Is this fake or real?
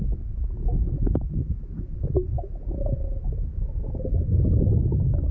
real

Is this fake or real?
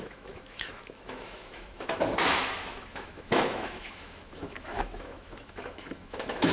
fake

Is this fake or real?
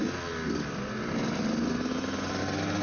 real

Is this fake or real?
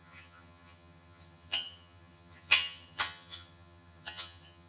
fake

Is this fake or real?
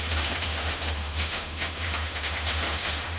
fake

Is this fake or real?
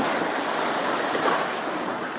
real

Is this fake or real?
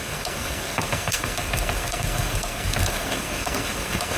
fake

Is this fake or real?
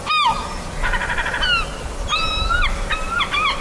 real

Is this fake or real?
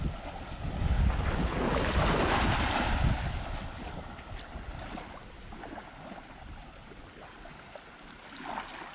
real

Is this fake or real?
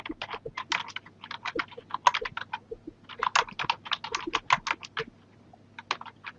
real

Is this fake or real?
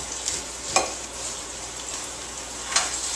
real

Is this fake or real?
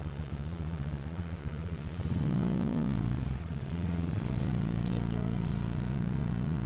fake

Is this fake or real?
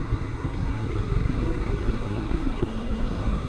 fake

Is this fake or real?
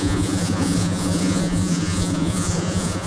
fake